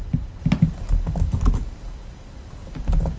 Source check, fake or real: real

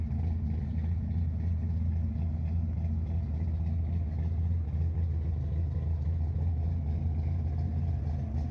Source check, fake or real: real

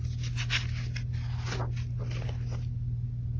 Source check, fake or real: real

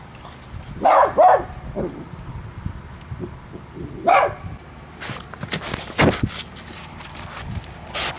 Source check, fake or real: real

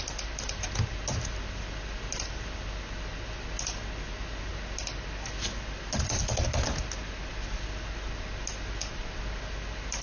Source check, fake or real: real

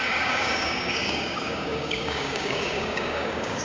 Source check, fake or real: fake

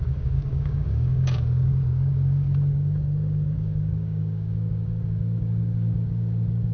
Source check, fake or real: fake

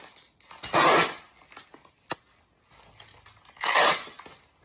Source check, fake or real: real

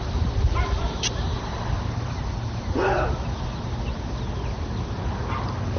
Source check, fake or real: real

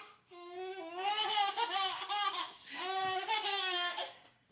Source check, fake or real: fake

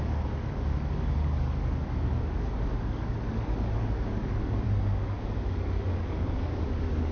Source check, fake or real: fake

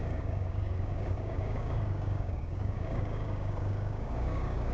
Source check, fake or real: fake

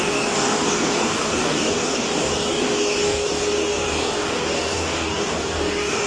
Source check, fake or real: fake